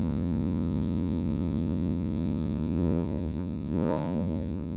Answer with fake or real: fake